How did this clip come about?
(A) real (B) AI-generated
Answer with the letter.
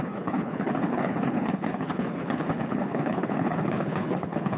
B